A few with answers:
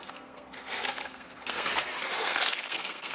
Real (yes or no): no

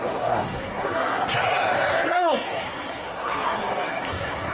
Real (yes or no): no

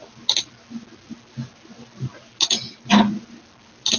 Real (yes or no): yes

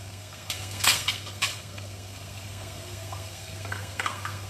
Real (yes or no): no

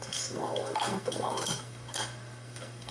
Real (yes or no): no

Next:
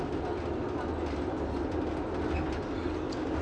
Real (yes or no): yes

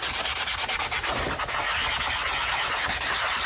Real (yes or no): yes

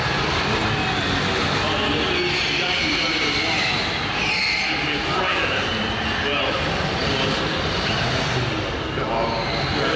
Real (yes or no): yes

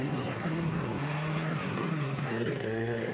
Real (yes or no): no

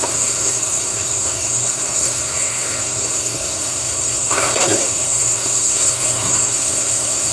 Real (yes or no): no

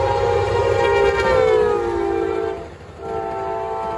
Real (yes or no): yes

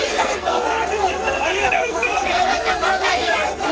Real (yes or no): no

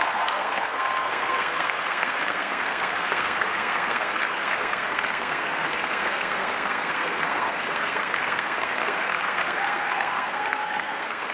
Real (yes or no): no